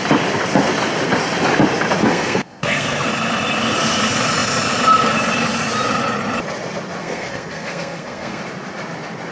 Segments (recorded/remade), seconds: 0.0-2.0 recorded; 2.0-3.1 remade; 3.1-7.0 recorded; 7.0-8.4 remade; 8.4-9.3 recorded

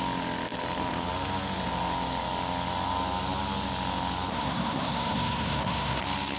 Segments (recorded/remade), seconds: 0.0-4.3 recorded; 4.3-6.0 remade; 6.0-6.4 recorded

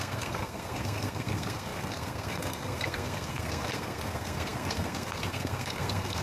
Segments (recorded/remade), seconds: 0.0-6.2 remade

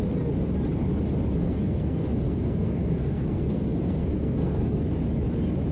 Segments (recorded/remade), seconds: 0.0-1.4 recorded; 1.4-4.8 remade; 4.8-5.7 recorded

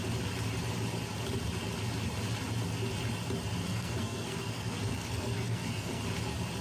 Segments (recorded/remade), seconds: 0.0-3.7 recorded; 3.7-6.0 remade; 6.0-6.6 recorded